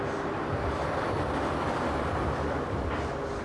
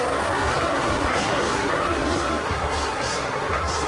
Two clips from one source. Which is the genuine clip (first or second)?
first